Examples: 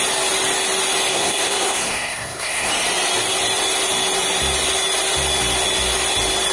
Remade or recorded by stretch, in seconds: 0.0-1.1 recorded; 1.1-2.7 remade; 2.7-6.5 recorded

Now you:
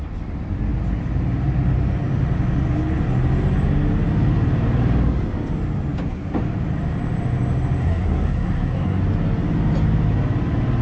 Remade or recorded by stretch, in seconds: 0.0-7.8 recorded; 7.8-9.0 remade; 9.0-10.8 recorded

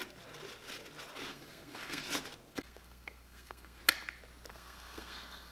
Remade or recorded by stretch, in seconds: 0.0-1.3 recorded; 1.3-2.0 remade; 2.0-2.5 recorded; 2.5-3.8 remade; 3.8-4.5 recorded; 4.5-5.5 remade

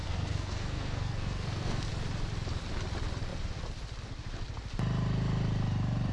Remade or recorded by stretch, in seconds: 0.0-1.9 remade; 1.9-6.1 recorded